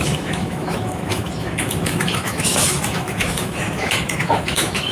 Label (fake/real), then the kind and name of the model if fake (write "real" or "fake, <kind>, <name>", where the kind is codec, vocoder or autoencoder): fake, autoencoder, DAC-VAE